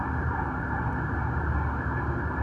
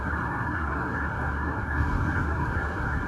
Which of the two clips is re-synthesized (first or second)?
second